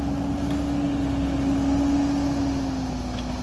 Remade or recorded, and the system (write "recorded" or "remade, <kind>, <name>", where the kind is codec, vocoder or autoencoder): recorded